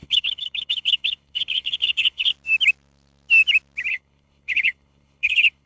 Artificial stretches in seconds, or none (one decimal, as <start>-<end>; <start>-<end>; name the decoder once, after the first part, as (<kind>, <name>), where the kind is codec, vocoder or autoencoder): 0.0-2.3 (codec, HILCodec); 3.9-5.7